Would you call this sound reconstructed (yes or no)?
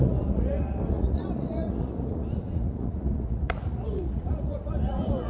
yes